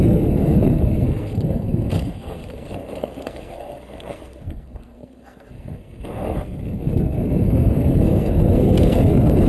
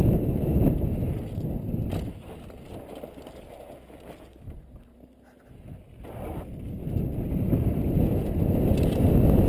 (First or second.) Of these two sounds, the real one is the second